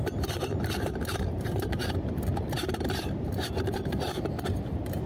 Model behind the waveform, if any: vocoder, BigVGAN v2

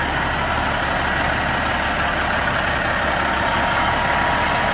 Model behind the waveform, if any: none